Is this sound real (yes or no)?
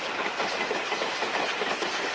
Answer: yes